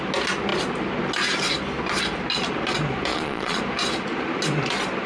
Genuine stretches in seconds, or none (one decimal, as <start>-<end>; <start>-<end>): 0.0-3.1; 3.6-5.1